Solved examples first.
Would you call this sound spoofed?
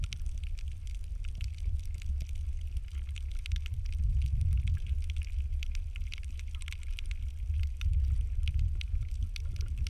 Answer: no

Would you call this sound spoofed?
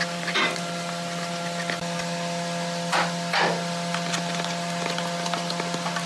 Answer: no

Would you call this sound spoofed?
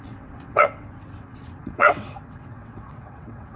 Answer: yes